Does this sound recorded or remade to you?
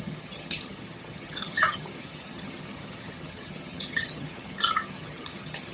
remade